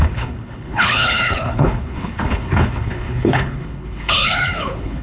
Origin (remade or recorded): remade